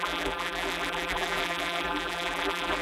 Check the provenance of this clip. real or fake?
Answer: fake